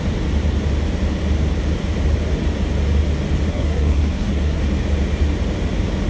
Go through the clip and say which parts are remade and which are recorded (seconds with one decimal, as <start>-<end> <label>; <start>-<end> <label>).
0.0-3.5 recorded; 3.5-4.6 remade; 4.6-6.1 recorded